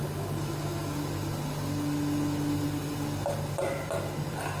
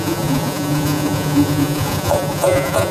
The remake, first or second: second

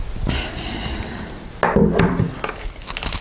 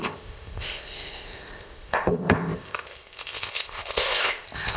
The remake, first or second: second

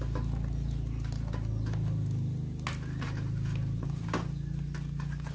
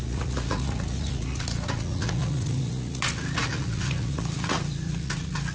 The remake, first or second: second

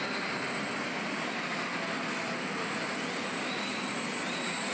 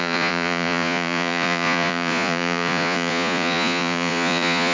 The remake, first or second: second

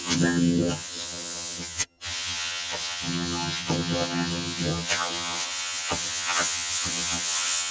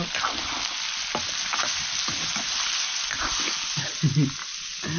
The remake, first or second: first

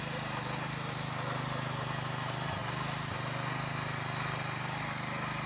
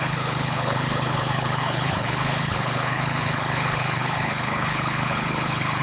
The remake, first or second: second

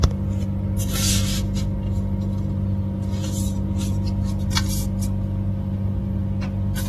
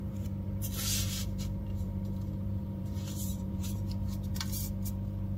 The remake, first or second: second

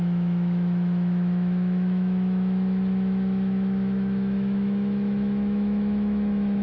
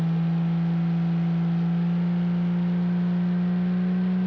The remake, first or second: first